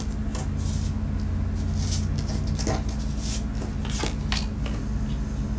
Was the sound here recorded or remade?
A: recorded